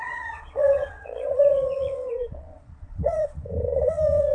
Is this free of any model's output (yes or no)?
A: no